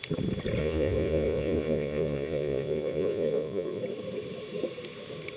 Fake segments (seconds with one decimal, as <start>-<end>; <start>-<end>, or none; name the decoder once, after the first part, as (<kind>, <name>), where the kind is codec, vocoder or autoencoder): 0.6-3.8 (vocoder, Vocos)